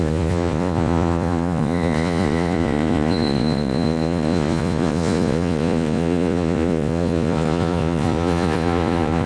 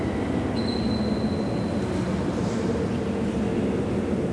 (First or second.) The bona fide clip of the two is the second